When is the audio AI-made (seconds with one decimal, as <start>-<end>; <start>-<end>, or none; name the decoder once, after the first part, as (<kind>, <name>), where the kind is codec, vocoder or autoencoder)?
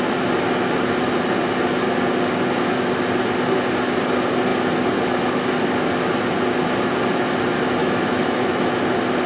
7.8-8.6 (autoencoder, DAC-VAE)